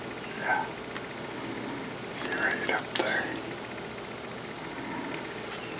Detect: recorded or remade recorded